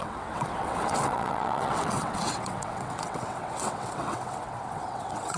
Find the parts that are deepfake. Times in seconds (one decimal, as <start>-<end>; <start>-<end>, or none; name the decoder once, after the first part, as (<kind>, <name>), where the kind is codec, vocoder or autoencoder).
0.0-5.4 (vocoder, WaveNeXt)